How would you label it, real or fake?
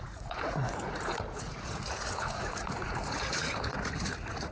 fake